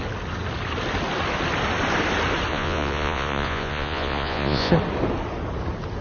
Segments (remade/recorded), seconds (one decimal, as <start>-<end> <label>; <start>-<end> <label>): 0.0-2.5 recorded; 2.5-4.7 remade; 4.7-6.0 recorded